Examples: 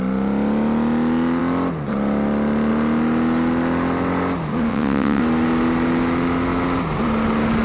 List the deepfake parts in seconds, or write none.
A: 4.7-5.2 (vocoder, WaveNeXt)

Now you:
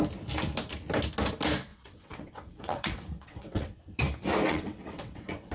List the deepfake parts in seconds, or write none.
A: 1.7-3.8 (vocoder, WaveNeXt); 4.5-5.5